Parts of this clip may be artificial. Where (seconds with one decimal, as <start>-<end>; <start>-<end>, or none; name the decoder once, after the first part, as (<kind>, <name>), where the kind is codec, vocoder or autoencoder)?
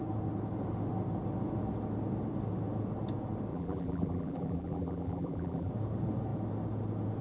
3.5-5.7 (vocoder, BigVGAN v2)